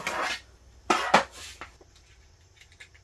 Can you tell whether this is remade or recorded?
recorded